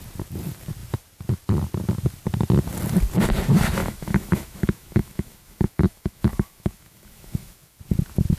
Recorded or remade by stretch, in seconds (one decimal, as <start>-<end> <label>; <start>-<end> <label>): 0.0-3.8 recorded; 3.8-7.8 remade; 7.8-8.4 recorded